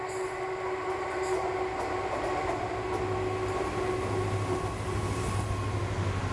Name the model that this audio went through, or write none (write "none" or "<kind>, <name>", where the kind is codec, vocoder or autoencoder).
none